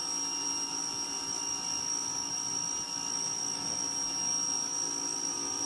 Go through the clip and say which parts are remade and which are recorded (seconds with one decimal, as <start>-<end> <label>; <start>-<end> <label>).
0.0-5.7 recorded